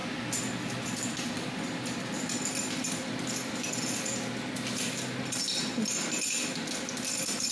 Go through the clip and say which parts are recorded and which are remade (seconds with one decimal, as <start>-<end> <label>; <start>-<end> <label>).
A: 0.0-7.5 recorded